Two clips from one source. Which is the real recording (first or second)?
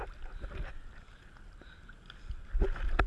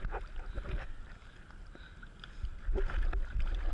first